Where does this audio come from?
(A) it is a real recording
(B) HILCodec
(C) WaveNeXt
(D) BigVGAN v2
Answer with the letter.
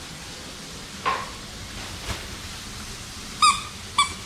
A